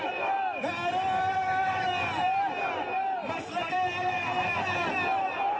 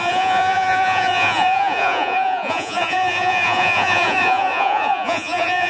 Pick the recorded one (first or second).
first